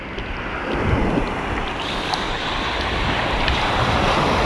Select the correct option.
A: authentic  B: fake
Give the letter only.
A